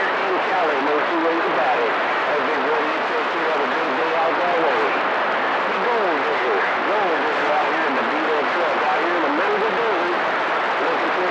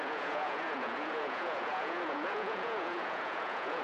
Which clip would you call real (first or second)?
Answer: first